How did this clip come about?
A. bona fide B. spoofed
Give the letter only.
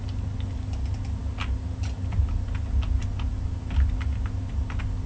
A